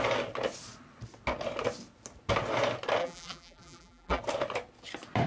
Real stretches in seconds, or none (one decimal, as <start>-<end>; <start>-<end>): 0.0-3.0; 4.2-5.3